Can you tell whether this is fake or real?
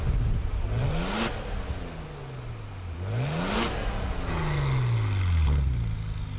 real